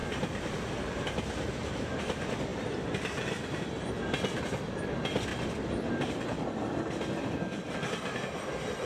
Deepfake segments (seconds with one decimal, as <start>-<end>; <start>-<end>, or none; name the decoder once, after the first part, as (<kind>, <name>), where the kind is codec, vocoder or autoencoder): none